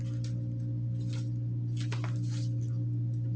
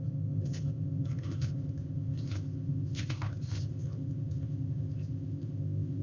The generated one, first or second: second